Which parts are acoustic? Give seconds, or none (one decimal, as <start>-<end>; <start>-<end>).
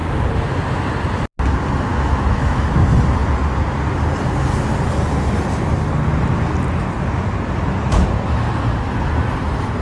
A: 0.0-1.9; 2.8-9.8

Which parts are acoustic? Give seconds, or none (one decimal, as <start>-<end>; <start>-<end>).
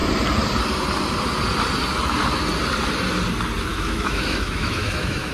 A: 0.0-3.7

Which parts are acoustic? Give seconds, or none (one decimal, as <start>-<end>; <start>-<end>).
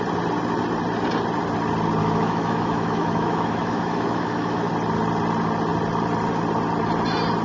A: 0.0-2.0; 4.7-7.4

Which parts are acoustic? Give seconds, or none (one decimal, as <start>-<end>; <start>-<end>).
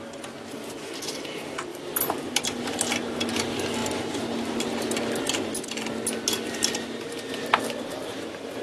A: 0.0-8.6